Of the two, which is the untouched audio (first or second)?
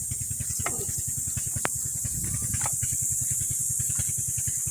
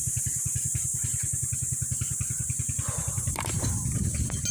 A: first